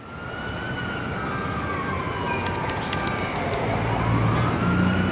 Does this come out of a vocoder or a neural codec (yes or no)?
no